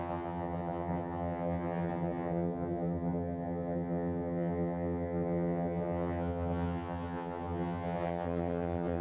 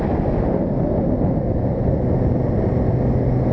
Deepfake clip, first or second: first